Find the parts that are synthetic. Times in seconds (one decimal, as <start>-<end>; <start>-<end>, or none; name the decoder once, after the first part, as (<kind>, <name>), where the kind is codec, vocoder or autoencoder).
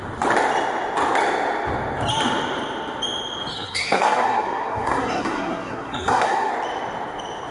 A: 3.5-6.5 (codec, SNAC)